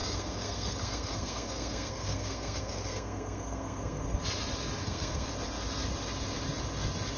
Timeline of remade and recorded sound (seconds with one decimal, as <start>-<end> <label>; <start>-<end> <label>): 0.0-4.2 remade; 4.2-4.8 recorded; 4.8-5.3 remade; 5.3-7.2 recorded